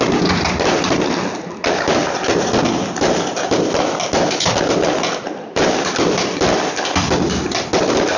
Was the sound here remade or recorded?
recorded